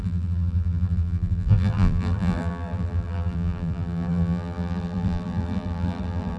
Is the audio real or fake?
fake